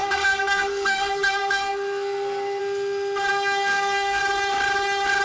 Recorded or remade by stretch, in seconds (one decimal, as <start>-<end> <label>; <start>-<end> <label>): 0.0-2.6 remade; 2.6-3.3 recorded; 3.3-4.2 remade; 4.2-5.2 recorded